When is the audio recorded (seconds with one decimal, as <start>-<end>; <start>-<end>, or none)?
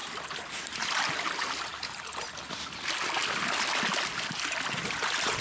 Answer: 1.0-5.4